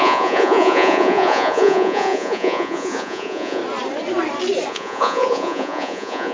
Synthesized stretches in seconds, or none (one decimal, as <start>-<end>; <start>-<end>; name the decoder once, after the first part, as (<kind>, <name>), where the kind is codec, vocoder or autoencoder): 0.0-3.6 (vocoder, Vocos); 4.7-6.3